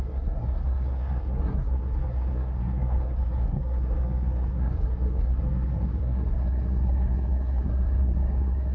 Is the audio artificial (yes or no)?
yes